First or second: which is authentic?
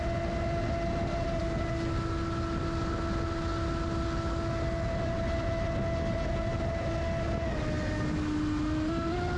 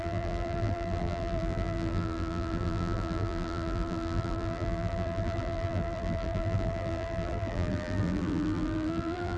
first